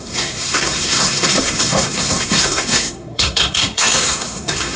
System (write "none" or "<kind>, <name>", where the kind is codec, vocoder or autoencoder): codec, SNAC